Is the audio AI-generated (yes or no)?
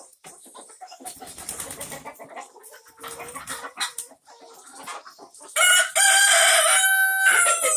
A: no